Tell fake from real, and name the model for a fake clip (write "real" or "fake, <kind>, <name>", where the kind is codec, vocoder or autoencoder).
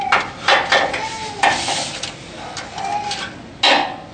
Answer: real